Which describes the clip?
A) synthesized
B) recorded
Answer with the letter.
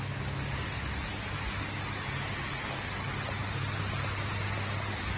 B